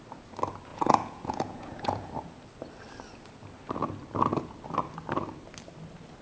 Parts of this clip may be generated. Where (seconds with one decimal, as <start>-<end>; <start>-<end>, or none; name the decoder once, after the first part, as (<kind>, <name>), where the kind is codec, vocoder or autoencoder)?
0.7-2.1 (vocoder, Vocos)

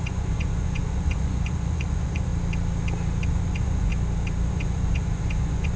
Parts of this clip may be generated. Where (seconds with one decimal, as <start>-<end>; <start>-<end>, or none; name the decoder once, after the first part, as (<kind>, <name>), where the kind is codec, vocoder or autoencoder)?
0.0-2.3 (vocoder, Vocos); 3.3-3.9; 4.5-5.8

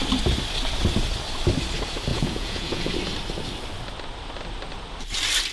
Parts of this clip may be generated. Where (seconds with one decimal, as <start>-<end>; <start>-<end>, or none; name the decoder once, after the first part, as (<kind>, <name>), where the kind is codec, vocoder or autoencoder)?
2.1-2.9 (vocoder, Vocos)

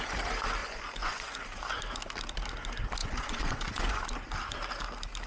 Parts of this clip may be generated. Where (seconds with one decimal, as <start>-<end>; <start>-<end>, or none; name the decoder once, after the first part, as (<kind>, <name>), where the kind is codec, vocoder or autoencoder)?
0.6-1.4 (vocoder, Vocos); 3.0-4.0

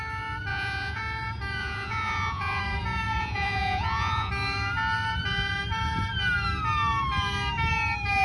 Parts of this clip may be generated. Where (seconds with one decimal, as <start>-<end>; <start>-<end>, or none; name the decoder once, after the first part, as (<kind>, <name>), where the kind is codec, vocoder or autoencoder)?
0.5-1.0 (vocoder, Vocos); 1.6-2.6; 3.2-4.3

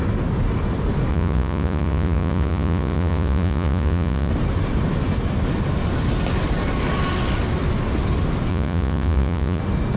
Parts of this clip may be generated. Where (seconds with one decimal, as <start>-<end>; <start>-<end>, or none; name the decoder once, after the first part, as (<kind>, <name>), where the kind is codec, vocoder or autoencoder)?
1.1-4.3 (vocoder, Vocos); 8.5-9.6